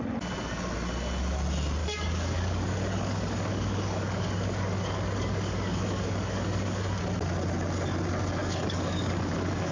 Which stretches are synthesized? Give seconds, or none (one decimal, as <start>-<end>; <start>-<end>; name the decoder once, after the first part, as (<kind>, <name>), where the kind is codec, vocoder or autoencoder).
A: 1.8-7.0 (codec, DAC); 8.4-9.7